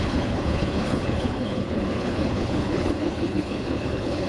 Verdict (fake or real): fake